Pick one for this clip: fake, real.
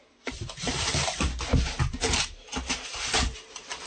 real